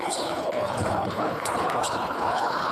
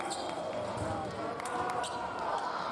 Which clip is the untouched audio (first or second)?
second